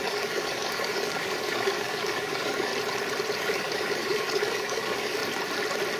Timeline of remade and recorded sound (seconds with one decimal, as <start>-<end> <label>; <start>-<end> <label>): 0.0-2.7 remade; 2.7-3.4 recorded; 3.4-5.2 remade; 5.2-6.0 recorded